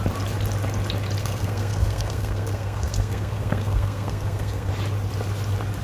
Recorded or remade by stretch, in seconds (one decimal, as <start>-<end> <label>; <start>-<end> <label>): 0.0-1.2 recorded; 1.2-4.7 remade; 4.7-5.8 recorded